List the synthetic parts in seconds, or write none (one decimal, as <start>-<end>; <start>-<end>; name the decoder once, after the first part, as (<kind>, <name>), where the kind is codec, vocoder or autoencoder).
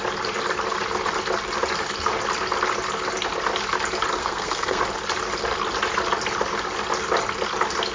4.2-4.8 (codec, SNAC)